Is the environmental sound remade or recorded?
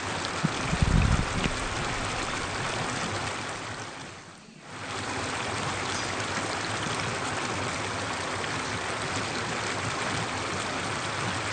recorded